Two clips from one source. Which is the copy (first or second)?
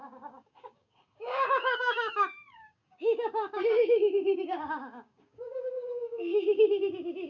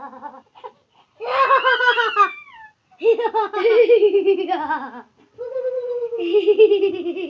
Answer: first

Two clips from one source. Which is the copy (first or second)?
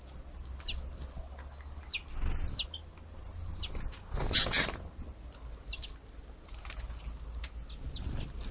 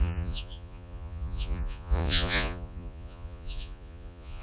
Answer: second